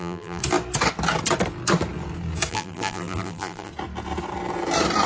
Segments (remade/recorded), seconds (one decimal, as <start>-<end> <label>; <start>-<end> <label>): 0.0-0.4 remade; 0.4-2.5 recorded; 2.5-3.7 remade; 3.7-5.1 recorded